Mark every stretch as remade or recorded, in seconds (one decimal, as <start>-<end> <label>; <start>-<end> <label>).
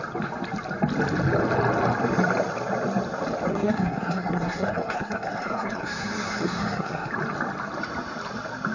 0.0-3.5 recorded; 3.5-7.1 remade; 7.1-8.7 recorded